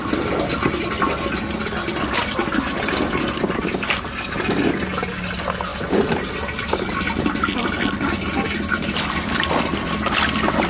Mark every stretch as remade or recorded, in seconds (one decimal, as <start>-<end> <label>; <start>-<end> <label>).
0.0-10.7 recorded